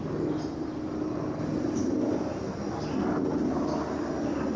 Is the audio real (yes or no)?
yes